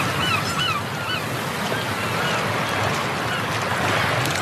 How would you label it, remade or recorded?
recorded